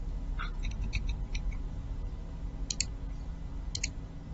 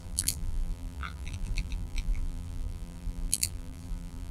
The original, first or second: first